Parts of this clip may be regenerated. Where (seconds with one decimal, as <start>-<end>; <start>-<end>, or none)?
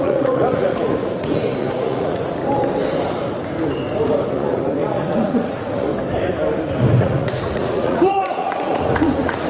0.0-2.4; 4.3-5.9; 7.0-9.5